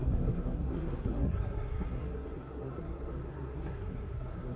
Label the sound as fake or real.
fake